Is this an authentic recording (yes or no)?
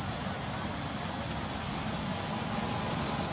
yes